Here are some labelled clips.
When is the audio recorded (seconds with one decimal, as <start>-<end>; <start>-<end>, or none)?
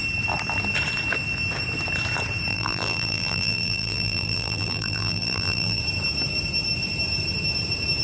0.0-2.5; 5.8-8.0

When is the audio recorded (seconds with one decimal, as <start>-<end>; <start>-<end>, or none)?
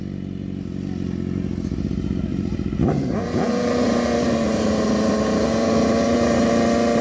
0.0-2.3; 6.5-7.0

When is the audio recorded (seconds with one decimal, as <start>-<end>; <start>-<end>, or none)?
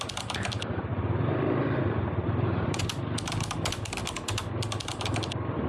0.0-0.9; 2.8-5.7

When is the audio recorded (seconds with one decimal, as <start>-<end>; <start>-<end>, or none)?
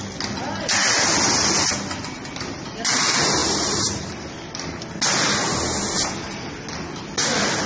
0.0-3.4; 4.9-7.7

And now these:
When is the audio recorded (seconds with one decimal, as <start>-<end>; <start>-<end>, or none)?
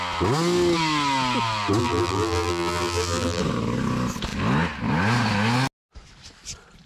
0.0-1.8; 3.4-6.9